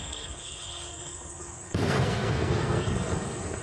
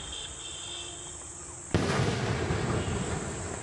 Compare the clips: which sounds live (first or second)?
second